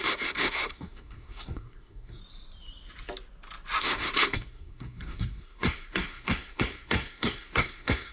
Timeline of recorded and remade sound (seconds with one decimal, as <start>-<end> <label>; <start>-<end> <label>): 0.0-2.2 remade; 2.2-3.8 recorded; 3.8-8.1 remade